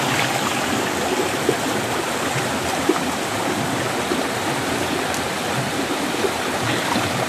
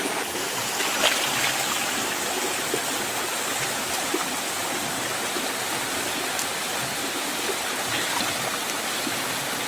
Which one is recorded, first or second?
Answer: second